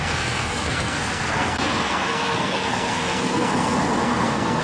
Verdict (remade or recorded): remade